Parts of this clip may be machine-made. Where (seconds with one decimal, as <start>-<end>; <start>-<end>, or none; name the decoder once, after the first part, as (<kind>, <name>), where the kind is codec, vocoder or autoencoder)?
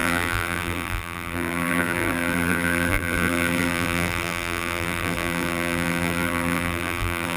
0.0-7.4 (vocoder, BigVGAN v2)